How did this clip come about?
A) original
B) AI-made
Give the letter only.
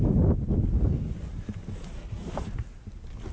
A